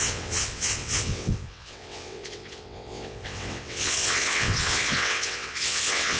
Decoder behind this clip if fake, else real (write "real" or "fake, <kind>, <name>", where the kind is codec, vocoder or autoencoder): fake, vocoder, WaveNeXt